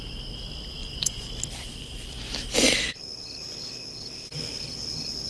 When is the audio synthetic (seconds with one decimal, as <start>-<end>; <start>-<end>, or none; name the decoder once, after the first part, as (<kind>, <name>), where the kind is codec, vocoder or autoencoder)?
0.8-1.3 (vocoder, Vocos)